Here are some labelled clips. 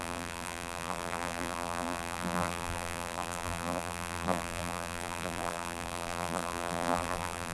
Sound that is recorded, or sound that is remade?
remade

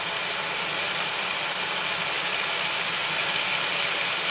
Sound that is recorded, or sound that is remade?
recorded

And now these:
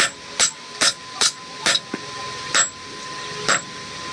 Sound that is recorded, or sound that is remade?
recorded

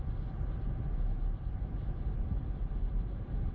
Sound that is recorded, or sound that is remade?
recorded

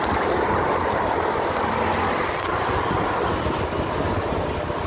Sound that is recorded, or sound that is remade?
recorded